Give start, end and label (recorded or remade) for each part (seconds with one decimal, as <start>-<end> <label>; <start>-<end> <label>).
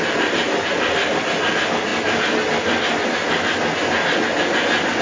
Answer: 0.0-5.0 recorded